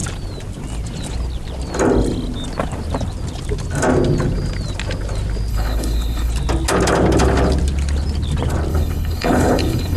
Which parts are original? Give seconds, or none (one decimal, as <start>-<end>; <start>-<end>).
0.0-5.5; 6.3-8.7